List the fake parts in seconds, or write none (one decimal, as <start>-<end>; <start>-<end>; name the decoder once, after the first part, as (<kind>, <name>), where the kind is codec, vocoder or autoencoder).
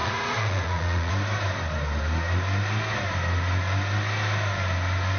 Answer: 0.0-1.1 (vocoder, Vocos)